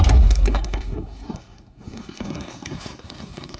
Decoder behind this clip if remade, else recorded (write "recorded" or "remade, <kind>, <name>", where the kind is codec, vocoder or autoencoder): remade, codec, SNAC